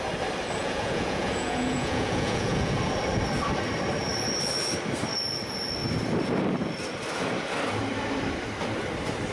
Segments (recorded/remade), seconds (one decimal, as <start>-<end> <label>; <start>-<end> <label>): 0.0-0.6 recorded; 0.6-2.8 remade; 2.8-9.3 recorded